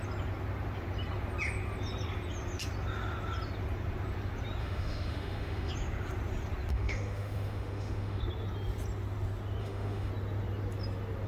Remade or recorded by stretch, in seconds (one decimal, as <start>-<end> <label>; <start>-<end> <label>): 0.0-4.6 recorded; 4.6-5.7 remade; 5.7-6.7 recorded; 6.7-8.2 remade; 8.2-9.6 recorded; 9.6-10.1 remade; 10.1-11.3 recorded